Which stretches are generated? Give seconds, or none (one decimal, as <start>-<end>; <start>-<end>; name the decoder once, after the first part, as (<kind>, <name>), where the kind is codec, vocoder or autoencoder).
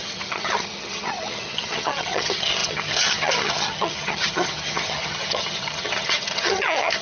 0.0-7.0 (vocoder, HiFi-GAN)